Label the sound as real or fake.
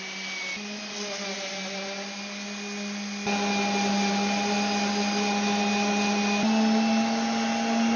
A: real